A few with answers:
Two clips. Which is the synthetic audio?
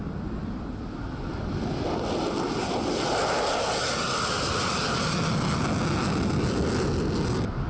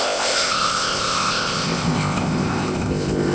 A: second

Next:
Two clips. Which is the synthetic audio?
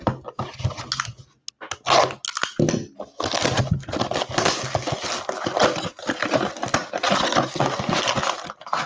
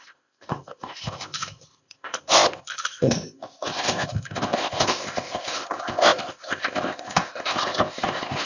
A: second